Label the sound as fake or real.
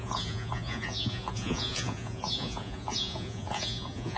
fake